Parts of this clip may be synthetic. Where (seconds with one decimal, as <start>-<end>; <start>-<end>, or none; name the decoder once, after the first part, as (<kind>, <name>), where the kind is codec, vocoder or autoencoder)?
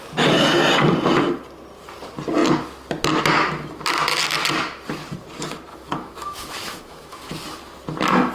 5.7-7.3 (autoencoder, DAC-VAE)